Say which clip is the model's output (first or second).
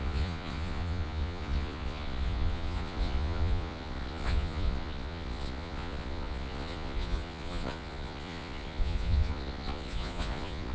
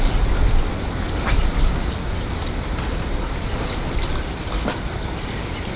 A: first